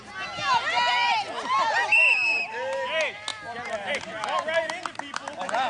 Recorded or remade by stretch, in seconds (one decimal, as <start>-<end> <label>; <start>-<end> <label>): 0.0-5.7 recorded